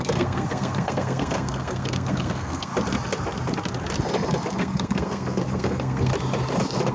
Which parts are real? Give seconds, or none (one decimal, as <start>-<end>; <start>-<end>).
2.7-4.6; 6.1-6.9